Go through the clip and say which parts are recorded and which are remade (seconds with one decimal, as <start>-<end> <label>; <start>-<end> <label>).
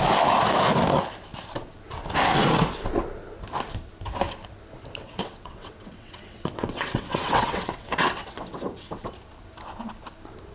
0.0-5.0 recorded; 5.0-9.1 remade; 9.1-10.5 recorded